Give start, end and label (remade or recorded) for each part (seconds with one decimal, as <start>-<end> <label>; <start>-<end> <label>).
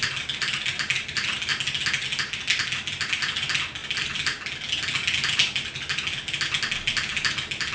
0.0-7.7 recorded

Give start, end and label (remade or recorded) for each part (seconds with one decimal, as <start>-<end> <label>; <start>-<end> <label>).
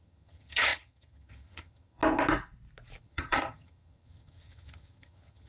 0.0-2.0 remade; 2.0-3.0 recorded; 3.0-5.5 remade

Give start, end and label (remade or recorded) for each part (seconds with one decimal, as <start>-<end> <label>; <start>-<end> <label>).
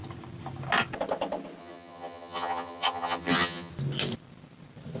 0.0-1.6 recorded; 1.6-3.7 remade; 3.7-5.0 recorded